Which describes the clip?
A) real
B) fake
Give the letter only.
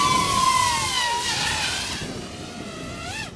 A